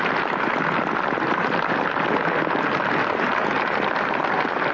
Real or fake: real